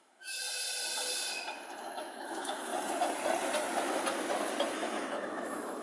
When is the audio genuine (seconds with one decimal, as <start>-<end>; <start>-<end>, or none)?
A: 0.4-1.8; 2.7-4.7